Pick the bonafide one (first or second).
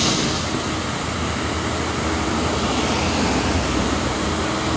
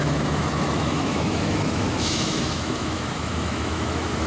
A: first